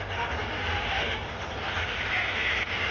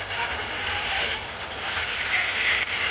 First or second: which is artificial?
second